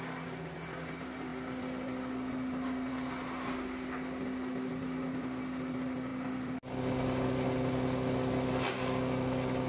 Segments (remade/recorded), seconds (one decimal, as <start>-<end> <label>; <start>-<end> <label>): 0.0-9.7 recorded